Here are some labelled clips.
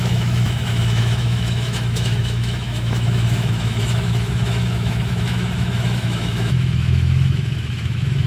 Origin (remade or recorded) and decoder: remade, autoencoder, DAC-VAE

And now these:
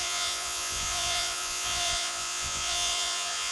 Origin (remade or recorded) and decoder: remade, vocoder, Vocos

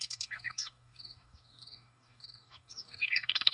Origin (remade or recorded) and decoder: remade, codec, DAC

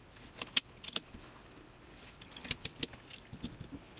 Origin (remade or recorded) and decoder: recorded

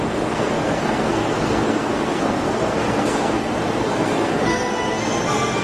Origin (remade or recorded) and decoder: remade, codec, SNAC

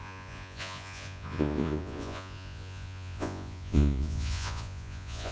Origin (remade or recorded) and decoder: remade, vocoder, Vocos